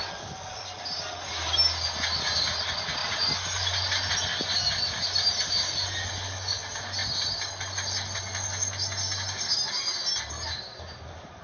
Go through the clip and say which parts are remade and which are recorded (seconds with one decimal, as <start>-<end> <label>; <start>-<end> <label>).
0.0-11.4 recorded